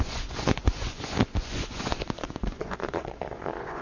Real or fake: fake